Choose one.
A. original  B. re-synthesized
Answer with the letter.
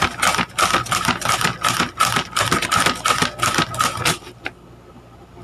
A